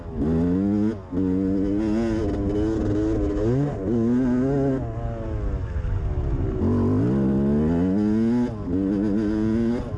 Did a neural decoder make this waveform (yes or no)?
no